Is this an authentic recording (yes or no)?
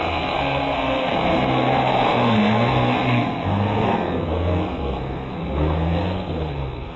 no